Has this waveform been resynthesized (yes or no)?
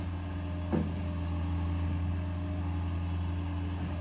no